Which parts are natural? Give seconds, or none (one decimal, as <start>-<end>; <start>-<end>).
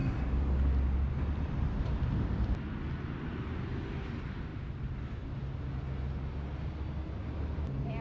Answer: 0.0-8.0